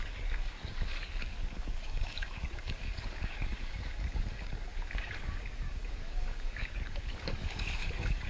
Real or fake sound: fake